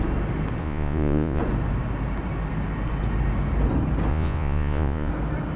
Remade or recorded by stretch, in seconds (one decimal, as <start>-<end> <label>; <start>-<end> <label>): 0.0-0.6 recorded; 0.6-1.4 remade; 1.4-4.1 recorded; 4.1-5.1 remade; 5.1-5.6 recorded